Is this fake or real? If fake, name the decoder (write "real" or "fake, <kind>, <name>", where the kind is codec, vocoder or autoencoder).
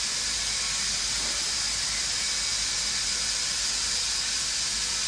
real